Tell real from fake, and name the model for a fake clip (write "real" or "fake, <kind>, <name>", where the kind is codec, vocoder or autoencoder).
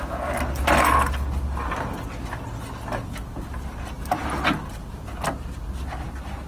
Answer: real